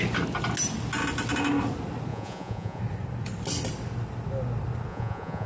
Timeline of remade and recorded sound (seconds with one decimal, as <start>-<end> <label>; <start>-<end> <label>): 0.0-2.1 recorded; 2.1-2.8 remade; 2.8-4.9 recorded; 4.9-5.5 remade